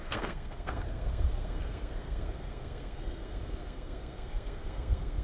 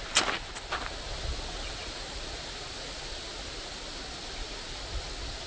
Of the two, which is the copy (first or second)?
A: first